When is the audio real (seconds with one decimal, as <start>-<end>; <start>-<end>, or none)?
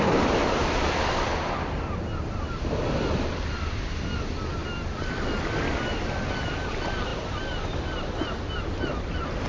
0.0-0.4; 1.8-9.5